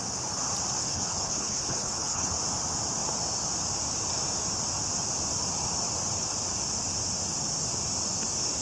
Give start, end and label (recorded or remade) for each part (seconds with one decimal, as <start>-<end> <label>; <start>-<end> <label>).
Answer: 0.0-0.8 recorded; 0.8-2.3 remade; 2.3-8.6 recorded